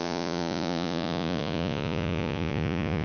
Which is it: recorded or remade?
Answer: remade